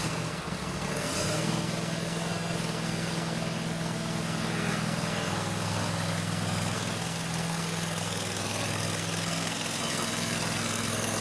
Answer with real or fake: fake